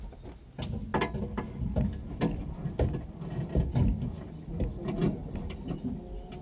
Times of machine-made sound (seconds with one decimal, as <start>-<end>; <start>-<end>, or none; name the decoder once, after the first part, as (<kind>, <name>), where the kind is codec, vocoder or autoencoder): none

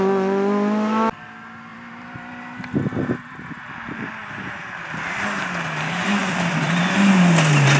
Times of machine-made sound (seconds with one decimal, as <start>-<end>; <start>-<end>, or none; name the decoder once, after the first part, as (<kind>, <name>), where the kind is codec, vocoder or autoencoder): 1.7-2.8 (vocoder, BigVGAN v2); 4.2-4.8; 6.2-6.8

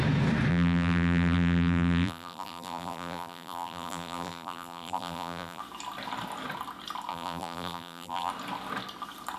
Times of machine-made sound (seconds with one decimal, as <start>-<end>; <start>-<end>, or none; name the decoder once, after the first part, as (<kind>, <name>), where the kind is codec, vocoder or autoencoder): 0.5-5.6 (vocoder, BigVGAN v2); 7.1-8.3

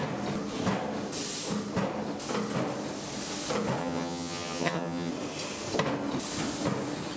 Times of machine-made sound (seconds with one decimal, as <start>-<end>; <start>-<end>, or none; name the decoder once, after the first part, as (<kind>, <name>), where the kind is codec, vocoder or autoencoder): 3.8-5.1 (vocoder, HiFi-GAN)